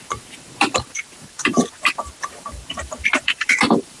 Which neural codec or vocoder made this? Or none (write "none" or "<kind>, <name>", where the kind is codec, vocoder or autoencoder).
vocoder, BigVGAN v2